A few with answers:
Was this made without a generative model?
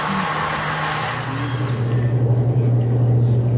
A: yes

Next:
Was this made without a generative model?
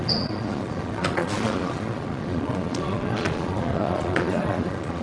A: no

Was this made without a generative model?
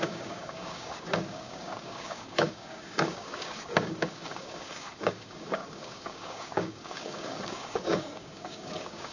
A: no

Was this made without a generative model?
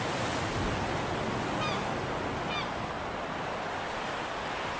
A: yes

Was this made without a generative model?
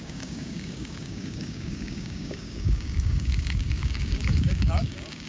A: no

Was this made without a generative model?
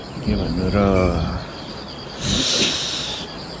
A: yes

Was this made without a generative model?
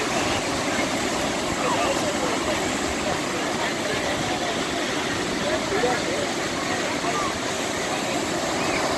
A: yes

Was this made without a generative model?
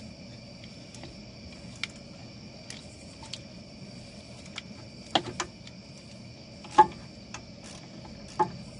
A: yes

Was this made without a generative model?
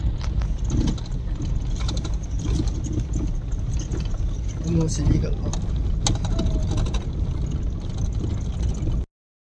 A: yes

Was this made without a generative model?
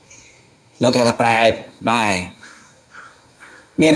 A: no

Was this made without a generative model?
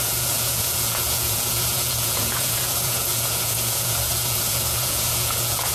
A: no